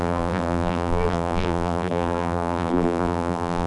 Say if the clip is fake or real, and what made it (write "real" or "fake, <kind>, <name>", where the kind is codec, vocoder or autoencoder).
fake, vocoder, BigVGAN v2